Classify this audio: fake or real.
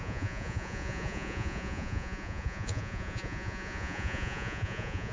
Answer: fake